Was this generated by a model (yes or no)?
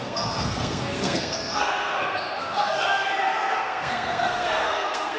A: yes